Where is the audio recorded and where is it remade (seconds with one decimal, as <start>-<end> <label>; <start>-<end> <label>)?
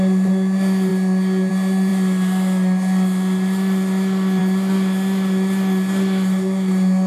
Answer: 0.0-7.1 recorded